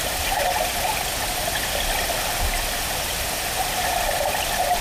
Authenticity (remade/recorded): recorded